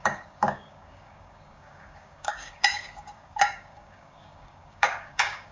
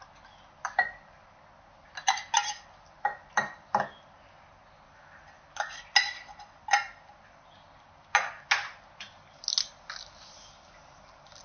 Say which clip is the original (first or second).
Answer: second